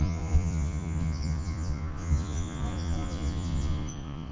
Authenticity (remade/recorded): remade